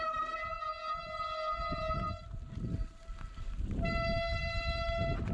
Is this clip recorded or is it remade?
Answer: recorded